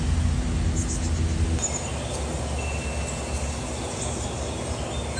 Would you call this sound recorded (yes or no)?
yes